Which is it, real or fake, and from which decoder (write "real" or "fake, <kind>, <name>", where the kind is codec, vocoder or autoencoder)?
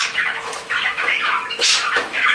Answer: fake, autoencoder, DAC-VAE